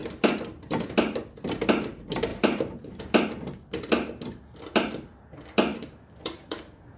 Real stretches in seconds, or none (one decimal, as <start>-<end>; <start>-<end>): 0.0-2.3; 3.0-5.7